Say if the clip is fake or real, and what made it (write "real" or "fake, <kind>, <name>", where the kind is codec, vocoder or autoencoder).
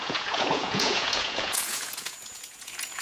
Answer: fake, vocoder, Vocos